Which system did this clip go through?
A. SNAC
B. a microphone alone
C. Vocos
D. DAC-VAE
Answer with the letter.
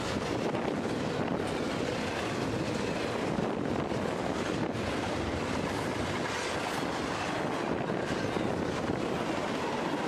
B